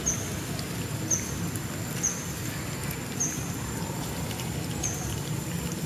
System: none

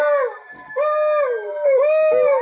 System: none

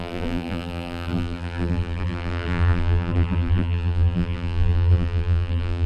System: vocoder, BigVGAN v2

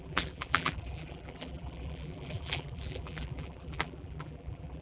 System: vocoder, BigVGAN v2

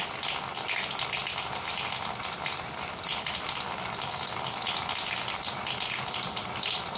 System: none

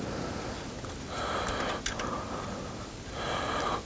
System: none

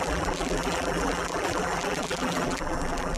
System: vocoder, BigVGAN v2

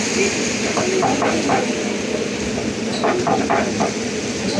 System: none